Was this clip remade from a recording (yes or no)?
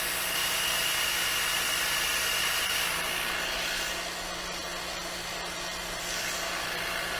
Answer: no